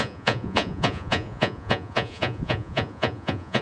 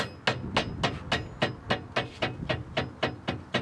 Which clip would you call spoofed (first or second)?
first